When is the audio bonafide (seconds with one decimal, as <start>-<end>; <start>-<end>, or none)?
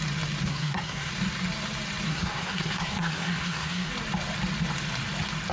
0.0-0.5; 1.1-2.1; 3.9-5.5